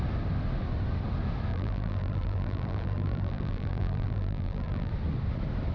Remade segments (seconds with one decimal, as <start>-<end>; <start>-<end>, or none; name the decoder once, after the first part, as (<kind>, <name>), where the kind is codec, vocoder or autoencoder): 1.5-4.9 (vocoder, BigVGAN v2)